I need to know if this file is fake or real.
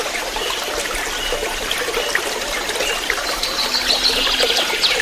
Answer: real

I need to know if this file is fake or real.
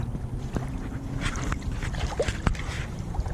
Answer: real